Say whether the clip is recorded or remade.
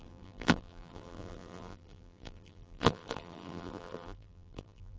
remade